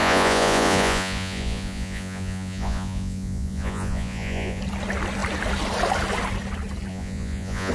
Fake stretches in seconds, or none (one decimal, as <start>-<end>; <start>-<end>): 0.0-4.6; 6.9-7.7